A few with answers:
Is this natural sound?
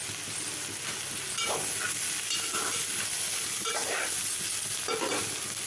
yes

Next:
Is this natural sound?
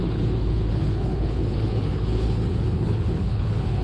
no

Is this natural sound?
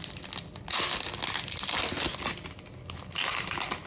yes